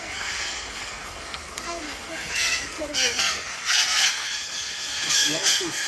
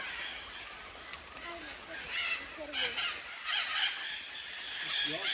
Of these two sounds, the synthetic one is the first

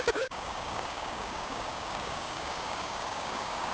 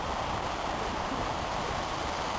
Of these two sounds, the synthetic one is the first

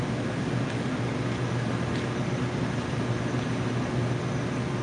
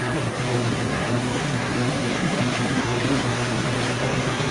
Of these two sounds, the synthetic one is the second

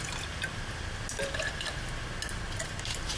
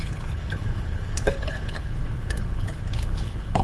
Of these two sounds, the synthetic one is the second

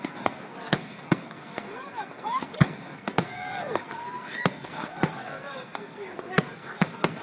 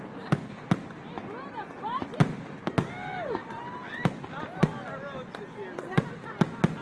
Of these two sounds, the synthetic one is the first